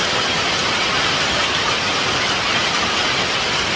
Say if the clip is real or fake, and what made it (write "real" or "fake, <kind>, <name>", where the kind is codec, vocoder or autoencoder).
real